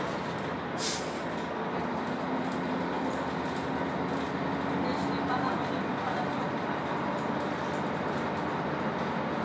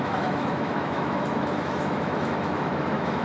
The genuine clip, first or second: first